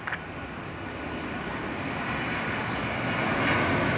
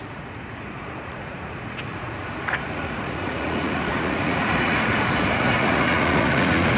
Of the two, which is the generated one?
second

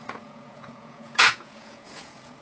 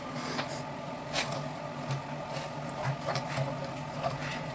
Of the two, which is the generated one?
first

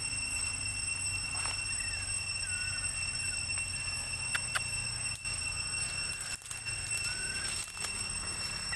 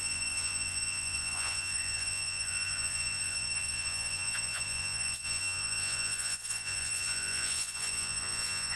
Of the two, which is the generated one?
second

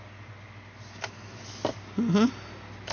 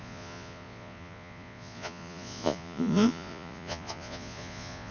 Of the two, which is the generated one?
second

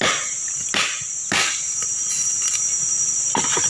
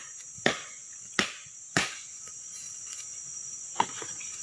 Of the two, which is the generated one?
second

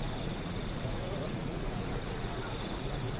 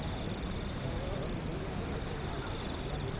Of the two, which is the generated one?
first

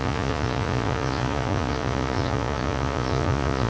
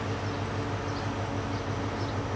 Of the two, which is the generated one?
first